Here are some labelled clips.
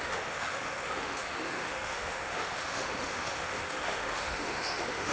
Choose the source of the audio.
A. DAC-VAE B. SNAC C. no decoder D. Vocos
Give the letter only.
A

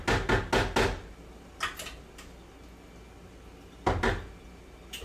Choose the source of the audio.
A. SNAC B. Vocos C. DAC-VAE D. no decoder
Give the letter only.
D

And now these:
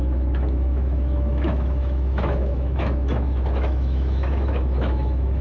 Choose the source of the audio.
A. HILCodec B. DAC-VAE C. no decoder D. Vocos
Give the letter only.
B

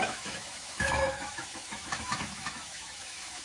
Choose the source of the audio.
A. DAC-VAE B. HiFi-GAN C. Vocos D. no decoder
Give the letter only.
A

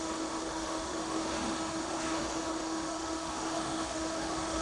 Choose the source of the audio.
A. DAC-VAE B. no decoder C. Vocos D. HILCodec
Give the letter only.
A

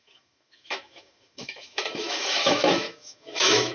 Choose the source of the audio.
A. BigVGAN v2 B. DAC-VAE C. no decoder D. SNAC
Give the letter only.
B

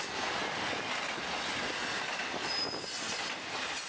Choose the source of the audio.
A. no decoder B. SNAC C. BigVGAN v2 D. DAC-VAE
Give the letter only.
A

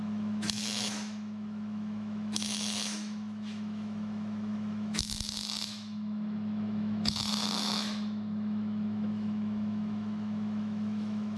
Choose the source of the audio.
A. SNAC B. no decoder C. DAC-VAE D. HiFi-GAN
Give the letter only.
C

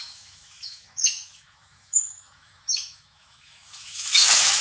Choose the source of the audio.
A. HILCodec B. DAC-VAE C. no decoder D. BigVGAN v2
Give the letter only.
B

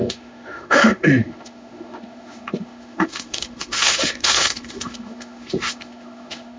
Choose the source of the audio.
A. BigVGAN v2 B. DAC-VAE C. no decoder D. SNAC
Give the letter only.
B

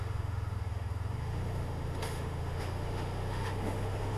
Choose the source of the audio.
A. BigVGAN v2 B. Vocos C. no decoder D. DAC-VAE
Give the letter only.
D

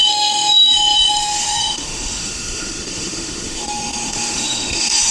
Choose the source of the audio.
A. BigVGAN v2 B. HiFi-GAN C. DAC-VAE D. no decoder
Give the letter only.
C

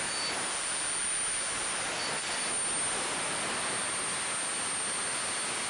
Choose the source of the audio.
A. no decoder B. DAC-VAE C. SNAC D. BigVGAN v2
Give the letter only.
A